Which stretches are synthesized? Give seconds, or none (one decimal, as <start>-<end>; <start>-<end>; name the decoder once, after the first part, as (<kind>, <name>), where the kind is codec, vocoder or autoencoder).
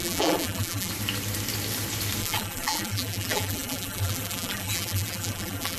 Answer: 0.0-0.9 (vocoder, BigVGAN v2); 2.2-5.8